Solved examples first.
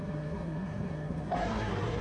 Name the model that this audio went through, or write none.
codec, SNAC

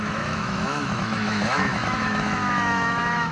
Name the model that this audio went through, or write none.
autoencoder, DAC-VAE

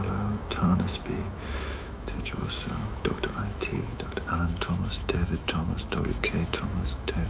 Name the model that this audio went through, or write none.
autoencoder, DAC-VAE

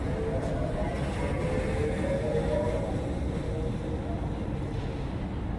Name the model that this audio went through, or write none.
none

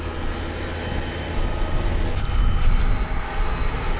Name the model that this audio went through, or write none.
none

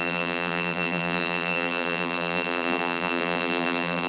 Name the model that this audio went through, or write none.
vocoder, BigVGAN v2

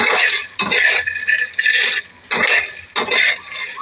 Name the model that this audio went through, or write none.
none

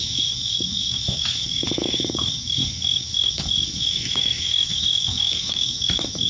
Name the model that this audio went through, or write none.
autoencoder, DAC-VAE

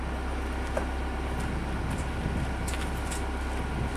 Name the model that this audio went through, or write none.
none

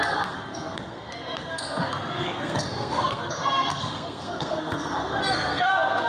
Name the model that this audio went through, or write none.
codec, SNAC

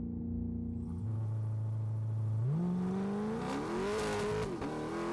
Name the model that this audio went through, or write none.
none